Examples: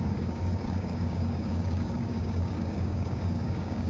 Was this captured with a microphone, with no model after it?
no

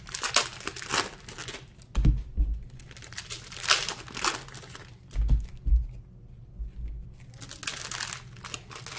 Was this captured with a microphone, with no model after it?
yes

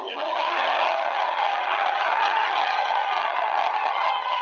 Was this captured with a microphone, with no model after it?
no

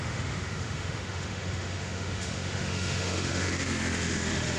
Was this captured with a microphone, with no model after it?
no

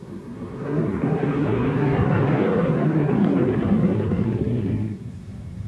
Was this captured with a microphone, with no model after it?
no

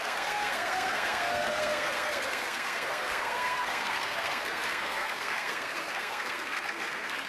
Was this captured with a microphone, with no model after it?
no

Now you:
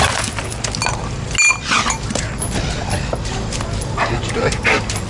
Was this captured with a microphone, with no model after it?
yes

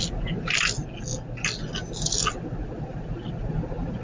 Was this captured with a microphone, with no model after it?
yes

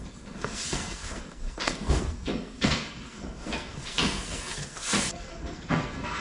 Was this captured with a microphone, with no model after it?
no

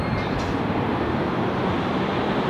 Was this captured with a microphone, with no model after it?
yes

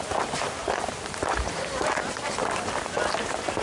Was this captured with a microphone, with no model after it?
yes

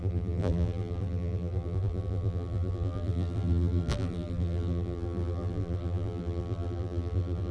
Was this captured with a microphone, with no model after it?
no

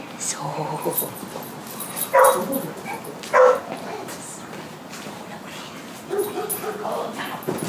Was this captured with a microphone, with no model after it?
yes